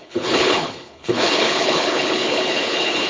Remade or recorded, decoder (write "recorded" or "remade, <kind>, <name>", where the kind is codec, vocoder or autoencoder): remade, codec, HILCodec